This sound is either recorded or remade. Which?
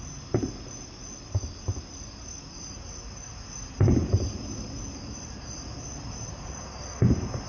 recorded